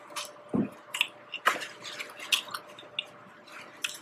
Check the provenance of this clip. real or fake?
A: real